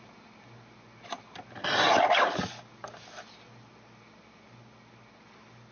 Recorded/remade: recorded